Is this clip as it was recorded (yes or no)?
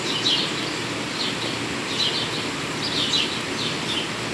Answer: yes